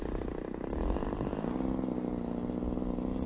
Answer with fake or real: real